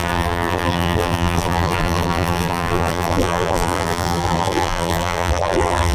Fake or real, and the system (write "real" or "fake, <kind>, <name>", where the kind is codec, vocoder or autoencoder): fake, vocoder, BigVGAN v2